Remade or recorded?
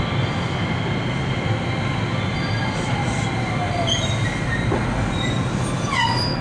recorded